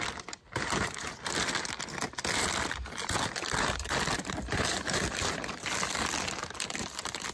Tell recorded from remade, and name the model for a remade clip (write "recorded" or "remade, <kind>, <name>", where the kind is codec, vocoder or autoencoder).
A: recorded